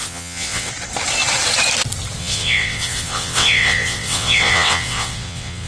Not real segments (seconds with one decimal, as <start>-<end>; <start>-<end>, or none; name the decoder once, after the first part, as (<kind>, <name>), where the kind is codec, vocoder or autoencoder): 0.0-0.7 (vocoder, WaveNeXt); 2.2-5.7